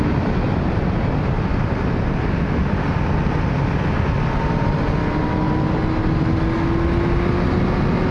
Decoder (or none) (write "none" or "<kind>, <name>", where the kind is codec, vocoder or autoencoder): none